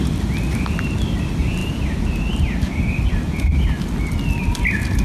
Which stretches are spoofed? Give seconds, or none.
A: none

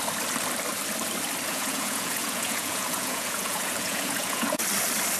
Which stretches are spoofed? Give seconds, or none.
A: 1.5-4.6 (vocoder, Vocos)